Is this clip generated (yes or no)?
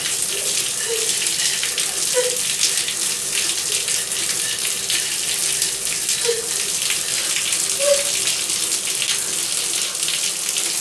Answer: no